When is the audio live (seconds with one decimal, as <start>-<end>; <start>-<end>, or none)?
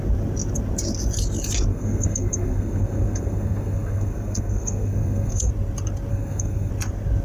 0.0-1.7; 5.5-6.1; 6.7-7.2